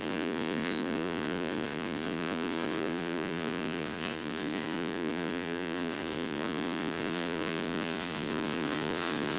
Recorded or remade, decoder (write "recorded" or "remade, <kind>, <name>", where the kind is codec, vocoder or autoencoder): remade, vocoder, Vocos